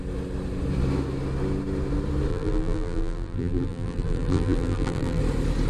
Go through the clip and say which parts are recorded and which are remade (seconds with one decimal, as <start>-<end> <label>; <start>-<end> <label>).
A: 0.0-2.3 recorded; 2.3-5.2 remade; 5.2-5.7 recorded